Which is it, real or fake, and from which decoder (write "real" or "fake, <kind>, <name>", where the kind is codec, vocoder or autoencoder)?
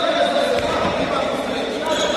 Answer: fake, vocoder, BigVGAN v2